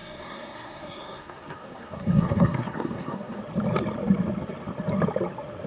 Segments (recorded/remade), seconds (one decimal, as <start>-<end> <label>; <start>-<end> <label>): 0.0-3.4 remade; 3.4-5.7 recorded